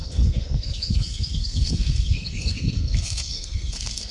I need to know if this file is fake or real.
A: fake